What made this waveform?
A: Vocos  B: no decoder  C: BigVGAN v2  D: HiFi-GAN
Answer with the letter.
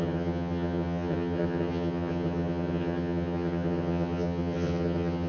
D